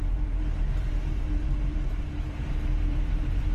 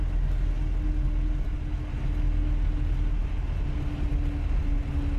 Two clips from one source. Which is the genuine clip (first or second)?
second